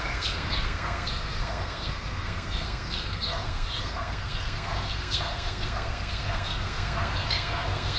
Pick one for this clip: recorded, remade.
remade